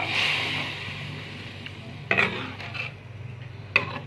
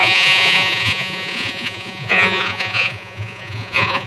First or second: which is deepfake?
second